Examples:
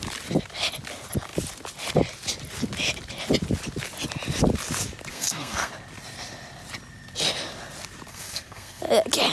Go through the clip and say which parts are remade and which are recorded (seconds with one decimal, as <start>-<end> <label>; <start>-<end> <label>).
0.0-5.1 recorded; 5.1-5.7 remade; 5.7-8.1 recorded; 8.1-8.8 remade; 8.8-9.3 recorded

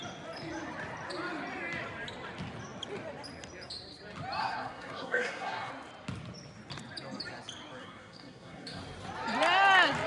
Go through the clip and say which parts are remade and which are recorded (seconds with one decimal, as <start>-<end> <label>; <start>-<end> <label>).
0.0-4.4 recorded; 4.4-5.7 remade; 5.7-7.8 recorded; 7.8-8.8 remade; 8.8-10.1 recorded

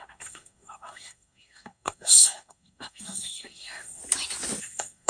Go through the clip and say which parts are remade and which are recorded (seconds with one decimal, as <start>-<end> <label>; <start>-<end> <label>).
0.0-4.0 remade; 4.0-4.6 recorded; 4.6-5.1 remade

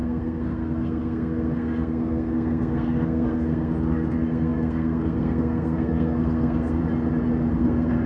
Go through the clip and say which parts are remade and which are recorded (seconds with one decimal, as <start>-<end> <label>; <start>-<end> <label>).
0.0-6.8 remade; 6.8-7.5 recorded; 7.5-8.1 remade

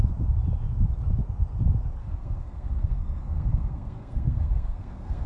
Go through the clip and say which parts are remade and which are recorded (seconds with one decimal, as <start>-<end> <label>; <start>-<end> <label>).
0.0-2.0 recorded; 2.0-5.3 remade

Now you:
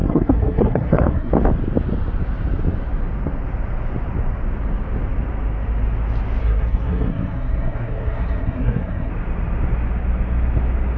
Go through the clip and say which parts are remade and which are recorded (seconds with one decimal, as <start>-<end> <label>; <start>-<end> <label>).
0.0-1.3 remade; 1.3-6.4 recorded; 6.4-9.1 remade; 9.1-11.0 recorded

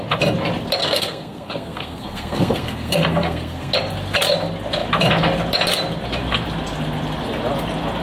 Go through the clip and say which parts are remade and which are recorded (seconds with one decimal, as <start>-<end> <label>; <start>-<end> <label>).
0.0-0.8 recorded; 0.8-3.7 remade; 3.7-8.0 recorded

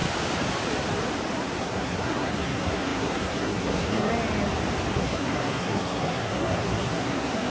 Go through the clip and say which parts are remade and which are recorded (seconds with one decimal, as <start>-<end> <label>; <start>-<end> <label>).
0.0-1.6 recorded; 1.6-4.1 remade; 4.1-4.9 recorded; 4.9-7.5 remade